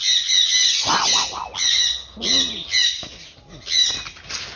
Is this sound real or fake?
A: real